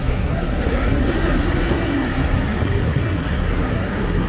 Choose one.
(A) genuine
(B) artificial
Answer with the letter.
B